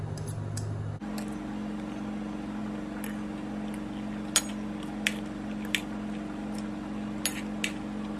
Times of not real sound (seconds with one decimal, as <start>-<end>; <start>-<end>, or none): none